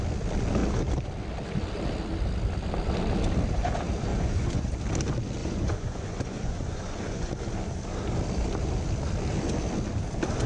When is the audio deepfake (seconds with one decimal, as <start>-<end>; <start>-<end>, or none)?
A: 4.1-4.7; 5.4-7.4